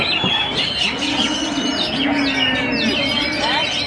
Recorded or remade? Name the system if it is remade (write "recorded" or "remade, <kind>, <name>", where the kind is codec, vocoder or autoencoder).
recorded